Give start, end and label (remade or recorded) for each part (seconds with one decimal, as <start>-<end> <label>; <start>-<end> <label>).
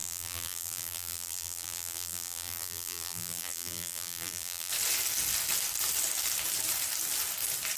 0.0-4.7 remade; 4.7-7.8 recorded